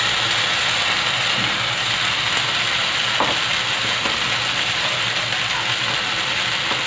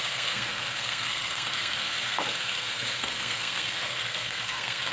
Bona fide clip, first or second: first